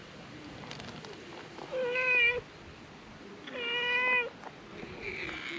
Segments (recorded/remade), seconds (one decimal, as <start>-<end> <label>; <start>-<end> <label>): 0.0-1.7 remade; 1.7-5.6 recorded